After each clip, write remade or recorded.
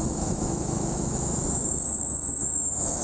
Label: remade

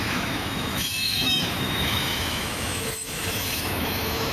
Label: remade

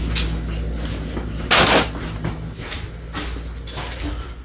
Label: recorded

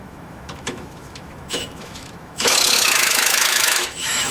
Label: remade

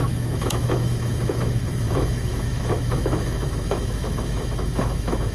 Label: remade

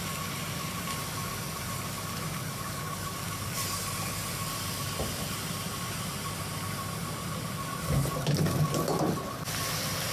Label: recorded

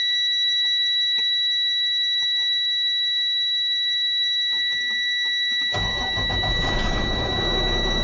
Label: remade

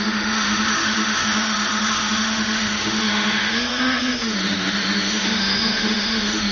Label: remade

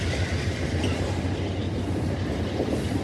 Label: recorded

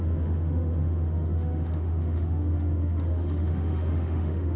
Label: remade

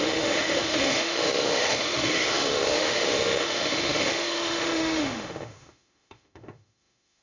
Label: remade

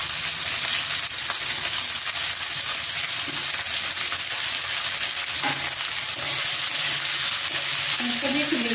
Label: recorded